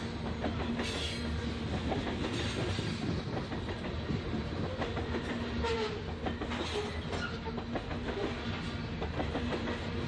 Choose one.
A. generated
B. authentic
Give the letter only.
B